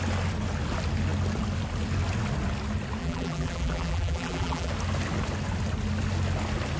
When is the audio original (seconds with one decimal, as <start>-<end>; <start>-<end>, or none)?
0.0-3.0; 4.7-6.8